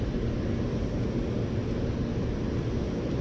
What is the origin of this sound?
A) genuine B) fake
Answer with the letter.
A